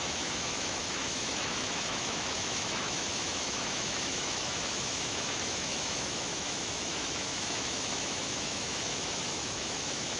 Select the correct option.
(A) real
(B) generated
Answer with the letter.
B